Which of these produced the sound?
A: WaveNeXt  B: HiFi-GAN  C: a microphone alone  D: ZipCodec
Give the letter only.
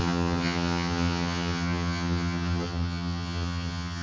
B